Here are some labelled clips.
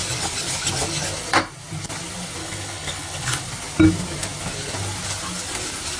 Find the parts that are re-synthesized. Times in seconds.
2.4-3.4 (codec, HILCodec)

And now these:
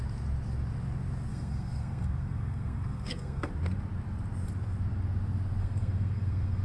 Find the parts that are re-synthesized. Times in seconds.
1.3-3.5 (codec, SNAC); 5.6-6.6